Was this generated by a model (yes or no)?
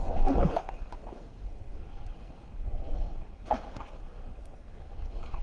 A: yes